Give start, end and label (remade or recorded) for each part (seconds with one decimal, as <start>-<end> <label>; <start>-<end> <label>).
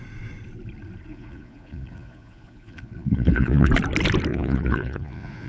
0.0-1.1 recorded; 1.1-3.7 remade; 3.7-4.3 recorded; 4.3-5.5 remade